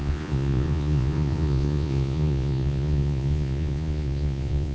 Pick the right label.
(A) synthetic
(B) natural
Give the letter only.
A